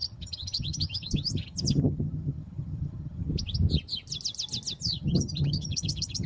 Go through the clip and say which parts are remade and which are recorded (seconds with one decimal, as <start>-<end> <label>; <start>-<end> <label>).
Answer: 0.0-3.3 remade; 3.3-4.8 recorded; 4.8-6.3 remade